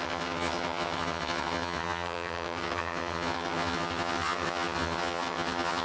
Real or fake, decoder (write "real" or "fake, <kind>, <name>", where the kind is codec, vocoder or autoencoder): fake, vocoder, HiFi-GAN